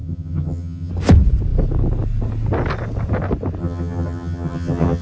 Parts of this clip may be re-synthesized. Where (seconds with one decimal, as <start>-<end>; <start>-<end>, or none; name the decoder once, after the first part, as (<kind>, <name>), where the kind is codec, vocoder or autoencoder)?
0.0-0.9 (vocoder, HiFi-GAN); 3.6-5.0